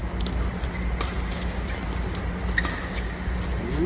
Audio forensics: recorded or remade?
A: recorded